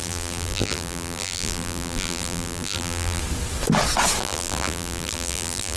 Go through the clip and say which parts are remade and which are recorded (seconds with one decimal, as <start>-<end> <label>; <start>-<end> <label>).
0.0-3.2 remade; 3.2-4.2 recorded; 4.2-5.8 remade